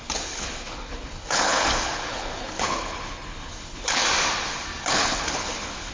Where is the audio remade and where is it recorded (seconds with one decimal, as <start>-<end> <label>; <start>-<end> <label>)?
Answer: 0.0-4.0 remade; 4.0-4.9 recorded; 4.9-5.9 remade